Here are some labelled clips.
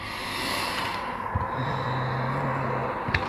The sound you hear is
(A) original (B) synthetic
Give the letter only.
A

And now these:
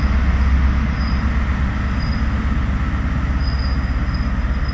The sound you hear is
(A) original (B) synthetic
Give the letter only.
A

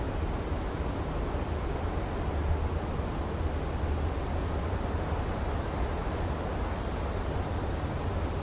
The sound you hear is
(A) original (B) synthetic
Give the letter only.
A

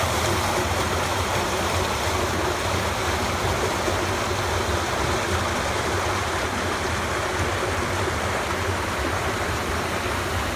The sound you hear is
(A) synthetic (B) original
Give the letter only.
B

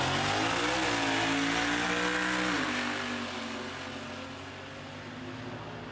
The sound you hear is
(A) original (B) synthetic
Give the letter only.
A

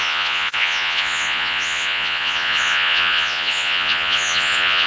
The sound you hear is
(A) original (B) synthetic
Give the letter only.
B